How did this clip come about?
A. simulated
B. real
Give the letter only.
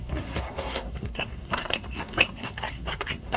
A